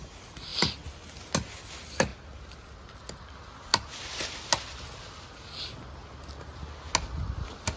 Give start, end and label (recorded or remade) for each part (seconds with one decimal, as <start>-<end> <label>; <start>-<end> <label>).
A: 0.0-7.8 recorded